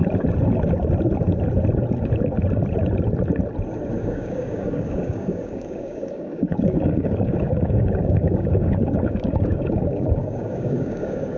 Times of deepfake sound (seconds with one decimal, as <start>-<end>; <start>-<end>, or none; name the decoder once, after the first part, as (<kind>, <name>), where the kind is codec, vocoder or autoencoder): 4.0-11.4 (codec, DAC)